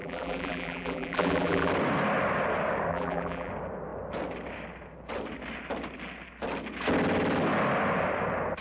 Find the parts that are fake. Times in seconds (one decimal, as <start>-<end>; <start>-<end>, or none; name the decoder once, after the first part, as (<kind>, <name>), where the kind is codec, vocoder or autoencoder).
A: 0.0-1.7 (vocoder, BigVGAN v2); 2.9-3.5